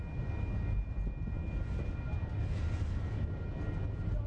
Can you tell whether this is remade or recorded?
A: recorded